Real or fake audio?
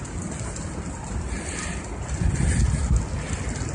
real